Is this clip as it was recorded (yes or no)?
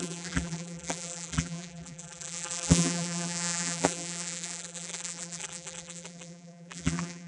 no